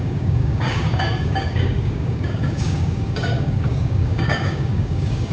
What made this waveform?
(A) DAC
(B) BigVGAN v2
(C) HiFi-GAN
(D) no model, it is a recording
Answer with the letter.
A